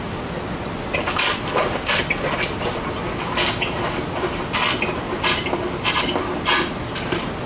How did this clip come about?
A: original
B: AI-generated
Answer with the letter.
A